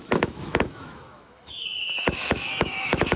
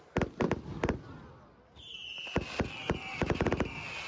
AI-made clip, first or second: first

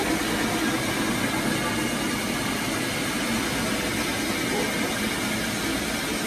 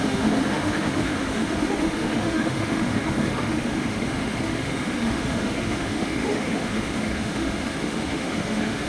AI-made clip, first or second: second